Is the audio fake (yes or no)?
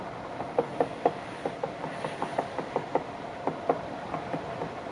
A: no